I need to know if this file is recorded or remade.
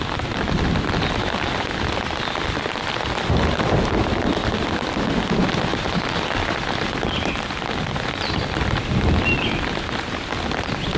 recorded